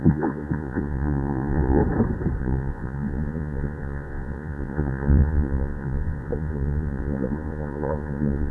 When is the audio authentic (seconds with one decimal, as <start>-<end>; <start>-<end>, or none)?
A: 1.8-2.4